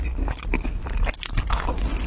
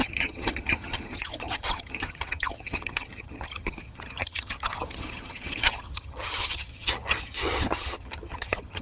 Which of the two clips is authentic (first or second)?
first